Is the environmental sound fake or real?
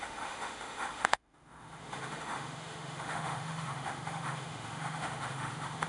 fake